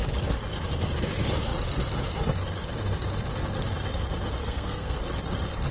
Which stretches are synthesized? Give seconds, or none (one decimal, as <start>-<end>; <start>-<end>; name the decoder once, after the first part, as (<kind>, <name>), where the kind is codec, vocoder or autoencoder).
4.4-5.0 (codec, SNAC)